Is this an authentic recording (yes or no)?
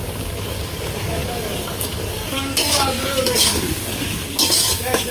no